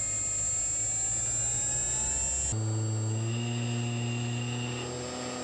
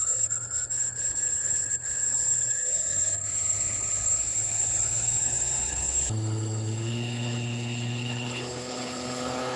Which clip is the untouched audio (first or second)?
first